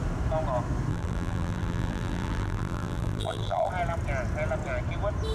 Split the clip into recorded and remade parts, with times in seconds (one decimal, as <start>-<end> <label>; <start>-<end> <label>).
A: 0.0-0.9 recorded; 0.9-3.7 remade; 3.7-5.3 recorded

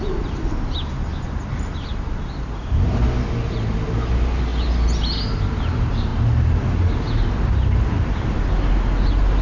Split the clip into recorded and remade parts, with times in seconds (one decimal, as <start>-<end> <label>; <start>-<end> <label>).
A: 0.0-9.4 recorded

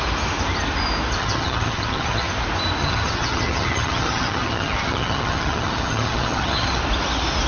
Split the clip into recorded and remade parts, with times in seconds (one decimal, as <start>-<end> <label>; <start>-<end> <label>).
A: 0.0-1.2 recorded; 1.2-2.3 remade; 2.3-2.8 recorded; 2.8-6.8 remade; 6.8-7.5 recorded

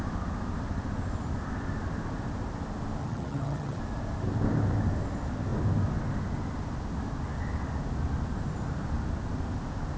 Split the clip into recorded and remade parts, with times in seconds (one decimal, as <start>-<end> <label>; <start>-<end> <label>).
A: 0.0-3.0 recorded; 3.0-3.8 remade; 3.8-10.0 recorded

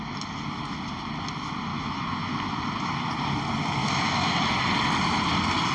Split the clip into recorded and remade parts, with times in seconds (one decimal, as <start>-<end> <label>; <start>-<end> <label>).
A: 0.0-1.7 recorded; 1.7-2.3 remade; 2.3-3.8 recorded; 3.8-4.3 remade; 4.3-5.7 recorded

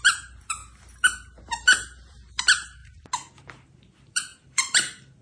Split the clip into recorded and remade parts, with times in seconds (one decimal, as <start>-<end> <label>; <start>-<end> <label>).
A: 0.0-0.6 remade; 0.6-1.4 recorded; 1.4-2.8 remade; 2.8-3.4 recorded; 3.4-5.2 remade